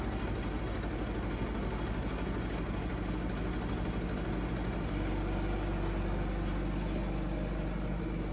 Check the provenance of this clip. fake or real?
real